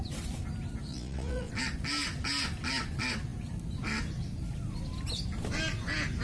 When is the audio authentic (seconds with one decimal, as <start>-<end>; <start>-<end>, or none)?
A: 0.0-0.9; 1.5-6.2